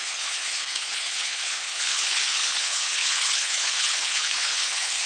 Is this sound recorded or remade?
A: remade